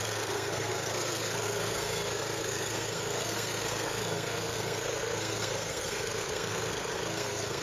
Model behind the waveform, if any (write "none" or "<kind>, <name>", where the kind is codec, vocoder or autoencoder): codec, SNAC